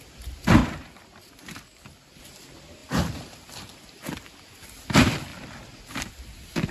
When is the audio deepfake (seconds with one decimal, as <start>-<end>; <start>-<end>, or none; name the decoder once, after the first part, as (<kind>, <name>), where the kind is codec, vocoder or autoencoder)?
0.6-2.2 (vocoder, BigVGAN v2); 5.3-6.1